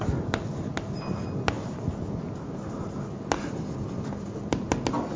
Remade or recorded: recorded